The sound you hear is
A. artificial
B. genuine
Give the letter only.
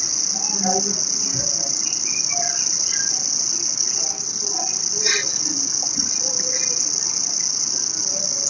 B